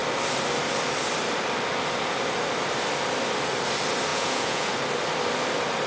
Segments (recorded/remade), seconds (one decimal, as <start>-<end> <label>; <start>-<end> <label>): 0.0-4.1 recorded; 4.1-4.7 remade; 4.7-5.9 recorded